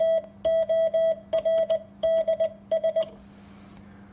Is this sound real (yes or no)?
yes